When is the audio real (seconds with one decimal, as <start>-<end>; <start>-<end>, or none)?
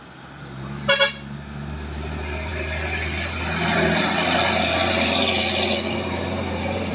0.0-6.9